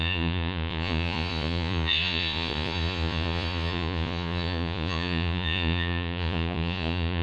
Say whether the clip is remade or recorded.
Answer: remade